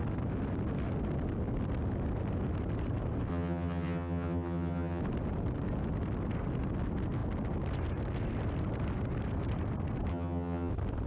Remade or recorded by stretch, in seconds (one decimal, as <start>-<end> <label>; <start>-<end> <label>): 0.0-3.3 recorded; 3.3-5.0 remade; 5.0-10.1 recorded; 10.1-10.7 remade; 10.7-11.1 recorded